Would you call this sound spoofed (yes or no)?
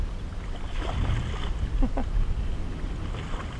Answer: no